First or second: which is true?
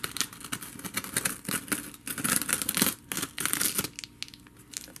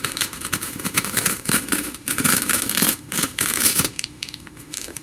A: first